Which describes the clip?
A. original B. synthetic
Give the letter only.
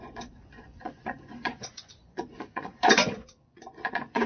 B